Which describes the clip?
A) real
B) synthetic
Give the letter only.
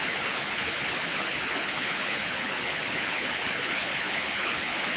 B